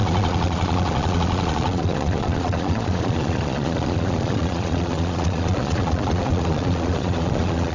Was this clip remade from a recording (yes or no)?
yes